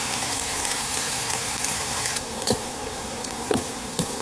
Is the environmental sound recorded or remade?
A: remade